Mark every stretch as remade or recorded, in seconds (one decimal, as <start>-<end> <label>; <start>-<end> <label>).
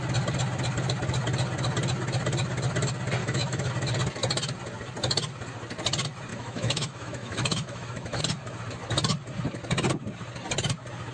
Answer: 0.0-3.2 recorded; 3.2-3.7 remade; 3.7-6.3 recorded; 6.3-8.2 remade; 8.2-11.1 recorded